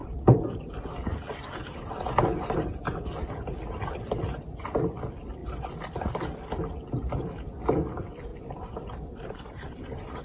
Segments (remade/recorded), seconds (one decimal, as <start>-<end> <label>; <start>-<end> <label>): 0.0-3.0 remade; 3.0-8.3 recorded; 8.3-10.2 remade